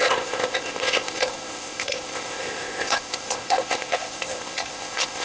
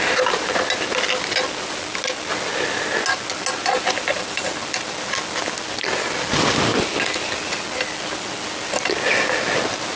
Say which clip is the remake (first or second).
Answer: first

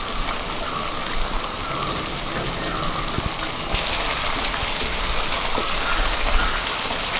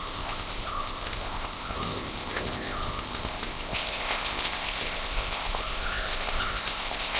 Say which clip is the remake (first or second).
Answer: second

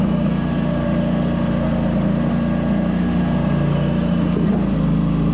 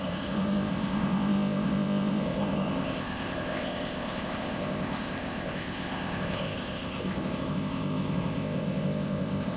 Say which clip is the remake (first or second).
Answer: second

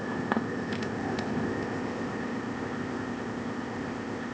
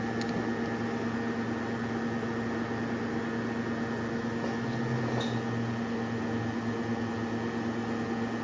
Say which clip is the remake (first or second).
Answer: first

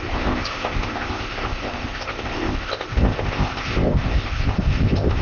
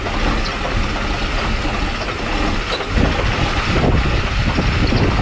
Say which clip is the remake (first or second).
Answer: first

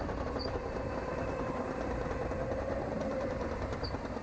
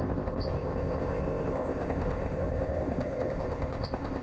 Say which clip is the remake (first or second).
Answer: second